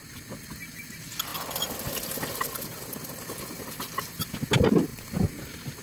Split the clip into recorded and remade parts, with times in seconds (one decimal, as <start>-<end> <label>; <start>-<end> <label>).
0.0-5.8 recorded